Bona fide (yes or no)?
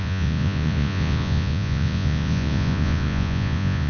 no